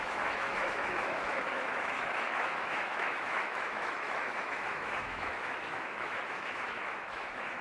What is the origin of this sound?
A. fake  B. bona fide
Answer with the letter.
A